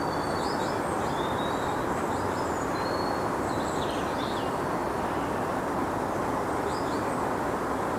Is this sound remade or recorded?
recorded